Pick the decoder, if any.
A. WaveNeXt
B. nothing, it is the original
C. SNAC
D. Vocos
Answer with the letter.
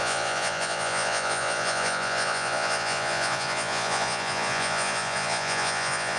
D